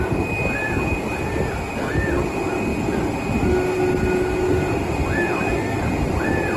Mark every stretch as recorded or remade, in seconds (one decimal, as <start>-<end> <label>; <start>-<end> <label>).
0.0-1.9 recorded; 1.9-2.7 remade; 2.7-5.3 recorded; 5.3-6.6 remade